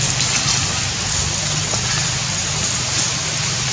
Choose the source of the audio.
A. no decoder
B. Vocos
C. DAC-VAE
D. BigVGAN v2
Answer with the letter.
A